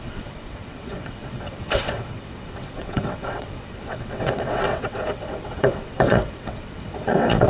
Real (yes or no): no